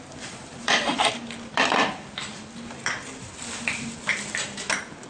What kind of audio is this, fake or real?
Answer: fake